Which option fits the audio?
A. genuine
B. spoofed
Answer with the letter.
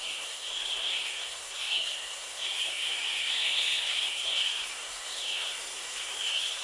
B